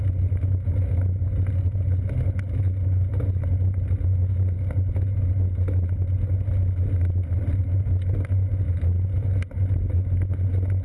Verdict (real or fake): real